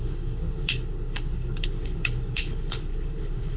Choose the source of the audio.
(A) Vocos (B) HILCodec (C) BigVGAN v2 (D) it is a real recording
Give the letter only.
B